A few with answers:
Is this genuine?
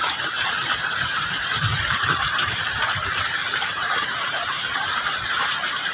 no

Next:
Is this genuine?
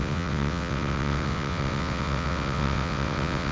no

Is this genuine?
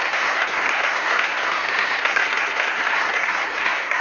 no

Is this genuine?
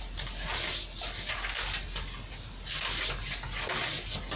yes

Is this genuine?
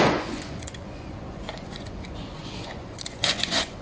no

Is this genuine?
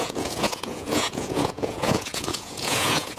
no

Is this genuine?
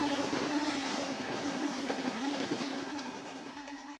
no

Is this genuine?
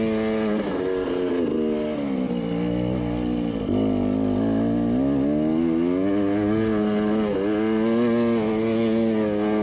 yes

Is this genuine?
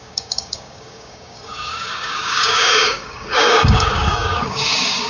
no